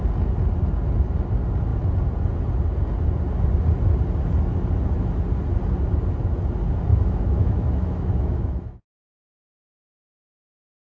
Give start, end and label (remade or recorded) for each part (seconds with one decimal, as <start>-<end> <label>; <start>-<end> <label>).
0.0-6.9 recorded; 6.9-9.3 remade; 9.3-10.8 recorded